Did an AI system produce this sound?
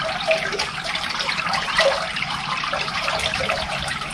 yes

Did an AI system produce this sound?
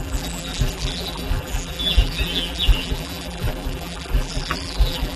yes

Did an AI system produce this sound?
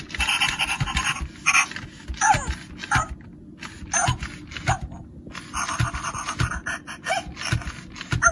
no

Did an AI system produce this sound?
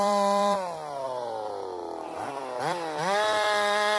yes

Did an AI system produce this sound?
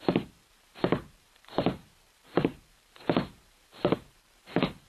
yes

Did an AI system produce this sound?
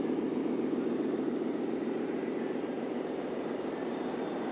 yes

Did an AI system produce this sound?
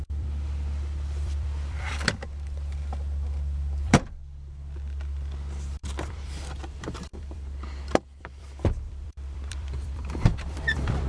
yes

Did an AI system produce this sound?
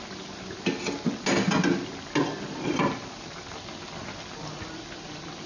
no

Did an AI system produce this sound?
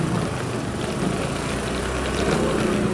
no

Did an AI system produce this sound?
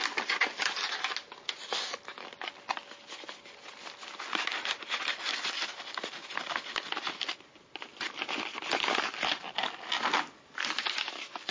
no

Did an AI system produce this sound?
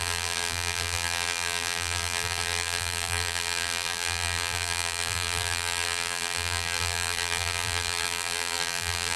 yes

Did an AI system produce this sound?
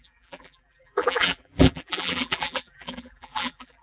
yes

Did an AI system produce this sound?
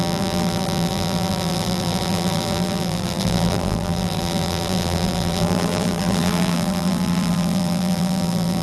yes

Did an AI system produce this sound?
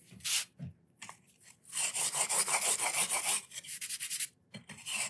yes